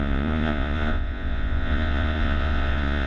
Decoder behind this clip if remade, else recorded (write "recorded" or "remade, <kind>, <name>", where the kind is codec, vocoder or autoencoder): remade, vocoder, Vocos